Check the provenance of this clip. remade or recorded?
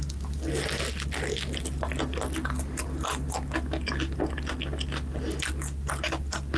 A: recorded